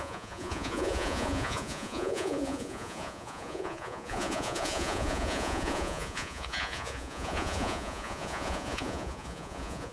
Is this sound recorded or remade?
remade